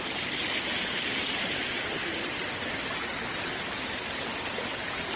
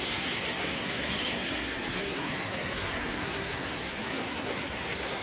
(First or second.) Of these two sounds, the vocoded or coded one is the second